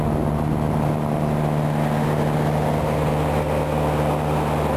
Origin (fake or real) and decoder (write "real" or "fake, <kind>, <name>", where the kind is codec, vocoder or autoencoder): real